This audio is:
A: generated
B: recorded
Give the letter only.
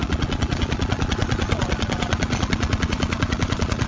A